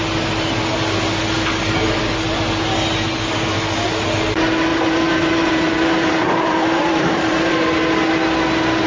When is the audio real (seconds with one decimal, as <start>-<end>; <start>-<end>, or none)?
0.0-4.7; 7.5-8.9